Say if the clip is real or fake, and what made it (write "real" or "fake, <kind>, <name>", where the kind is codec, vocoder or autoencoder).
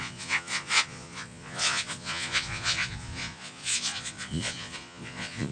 fake, vocoder, Vocos